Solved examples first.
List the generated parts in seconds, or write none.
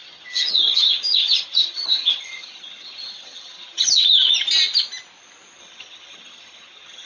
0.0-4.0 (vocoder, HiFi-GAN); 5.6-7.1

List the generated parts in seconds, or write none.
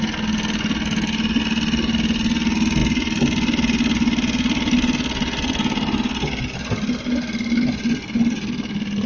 none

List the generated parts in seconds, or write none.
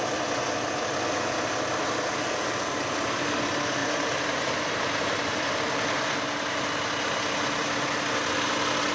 3.8-6.0 (vocoder, BigVGAN v2)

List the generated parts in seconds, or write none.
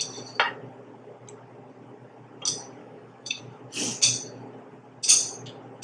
2.8-3.4 (codec, DAC)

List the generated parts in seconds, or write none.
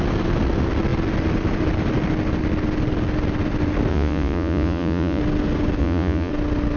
3.9-5.2 (vocoder, Vocos); 5.8-6.3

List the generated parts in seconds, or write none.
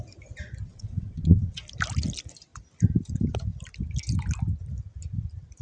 0.7-1.6 (vocoder, WaveNeXt)